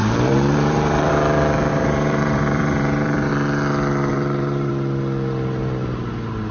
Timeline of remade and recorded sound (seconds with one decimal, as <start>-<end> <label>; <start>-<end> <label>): 0.0-1.1 remade; 1.1-1.7 recorded; 1.7-3.3 remade; 3.3-4.1 recorded; 4.1-4.7 remade; 4.7-6.5 recorded